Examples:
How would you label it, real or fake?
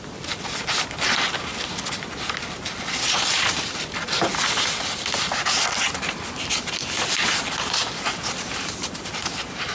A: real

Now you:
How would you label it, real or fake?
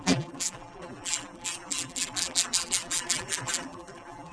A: fake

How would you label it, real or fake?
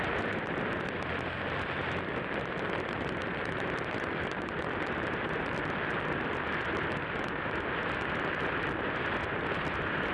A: fake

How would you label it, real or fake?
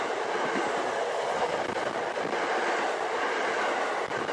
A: real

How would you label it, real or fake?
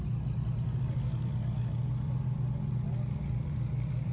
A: real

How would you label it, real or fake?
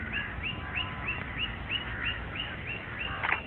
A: real